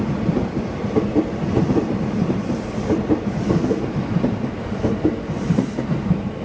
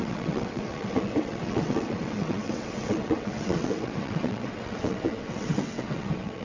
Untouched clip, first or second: first